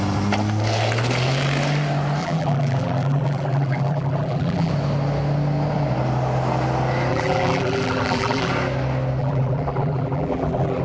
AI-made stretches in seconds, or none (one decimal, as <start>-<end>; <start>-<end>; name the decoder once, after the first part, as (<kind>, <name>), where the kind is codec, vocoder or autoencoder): 2.2-4.7 (vocoder, BigVGAN v2); 7.1-8.5; 9.2-10.8